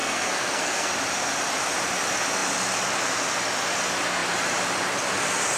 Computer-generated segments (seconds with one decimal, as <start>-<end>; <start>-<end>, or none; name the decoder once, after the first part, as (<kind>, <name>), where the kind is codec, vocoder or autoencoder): 0.0-0.9 (codec, SNAC)